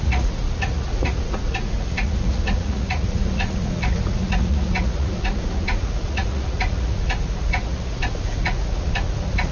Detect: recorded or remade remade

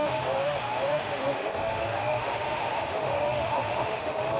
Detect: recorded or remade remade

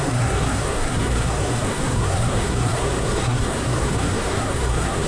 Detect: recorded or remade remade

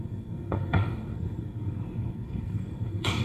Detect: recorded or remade remade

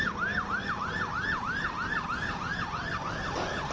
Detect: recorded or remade recorded